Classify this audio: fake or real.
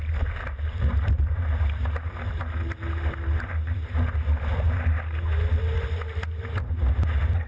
real